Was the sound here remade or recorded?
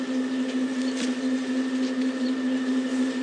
remade